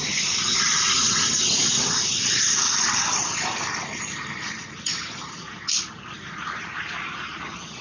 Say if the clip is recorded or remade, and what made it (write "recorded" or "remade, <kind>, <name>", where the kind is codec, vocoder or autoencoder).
recorded